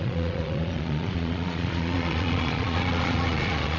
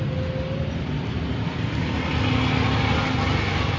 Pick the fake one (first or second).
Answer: first